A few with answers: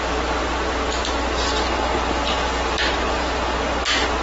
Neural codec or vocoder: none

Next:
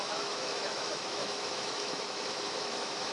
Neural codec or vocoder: autoencoder, DAC-VAE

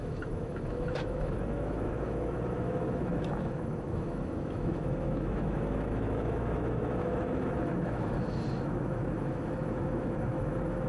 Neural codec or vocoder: autoencoder, DAC-VAE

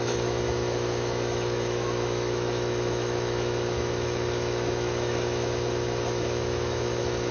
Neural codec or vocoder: autoencoder, DAC-VAE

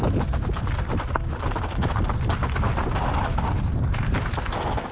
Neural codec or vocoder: none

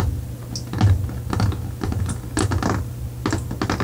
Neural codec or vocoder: none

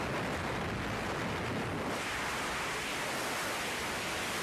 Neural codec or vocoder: none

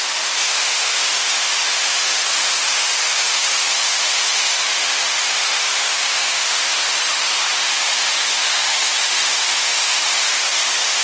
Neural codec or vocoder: autoencoder, DAC-VAE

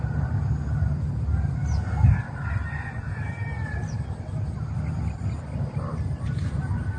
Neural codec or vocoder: none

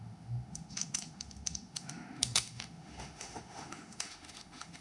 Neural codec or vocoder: autoencoder, DAC-VAE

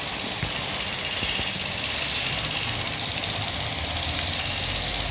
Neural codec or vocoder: none